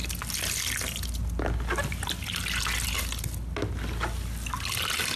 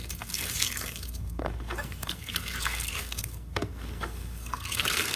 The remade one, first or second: second